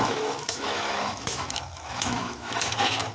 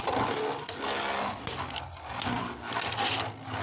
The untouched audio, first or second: second